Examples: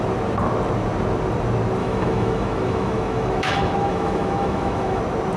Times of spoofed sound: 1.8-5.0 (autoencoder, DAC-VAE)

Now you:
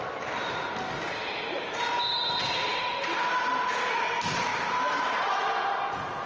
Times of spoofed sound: none